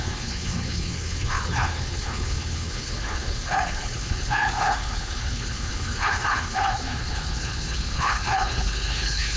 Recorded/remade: remade